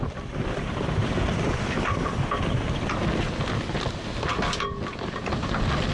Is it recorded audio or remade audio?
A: recorded